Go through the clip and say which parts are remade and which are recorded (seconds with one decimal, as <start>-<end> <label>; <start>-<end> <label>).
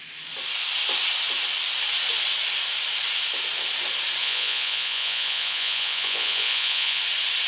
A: 0.0-4.2 recorded; 4.2-7.0 remade; 7.0-7.5 recorded